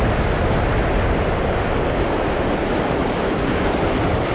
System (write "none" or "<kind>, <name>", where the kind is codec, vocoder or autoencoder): none